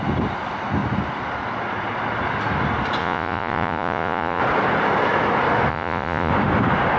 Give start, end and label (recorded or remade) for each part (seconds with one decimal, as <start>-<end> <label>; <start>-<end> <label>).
0.0-3.0 recorded; 3.0-4.4 remade; 4.4-5.7 recorded; 5.7-6.3 remade; 6.3-7.0 recorded